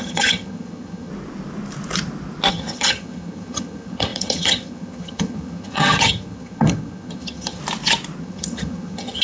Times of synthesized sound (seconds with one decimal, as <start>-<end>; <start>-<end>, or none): 0.0-1.1; 2.5-7.6; 8.2-9.2